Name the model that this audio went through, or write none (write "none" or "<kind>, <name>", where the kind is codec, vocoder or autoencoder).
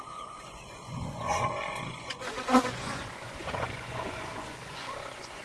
vocoder, Vocos